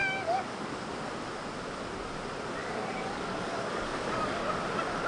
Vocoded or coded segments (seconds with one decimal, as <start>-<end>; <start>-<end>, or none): 0.0-0.6; 2.6-4.5